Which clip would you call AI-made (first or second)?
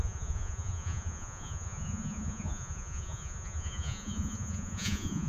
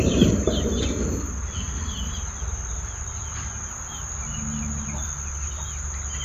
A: first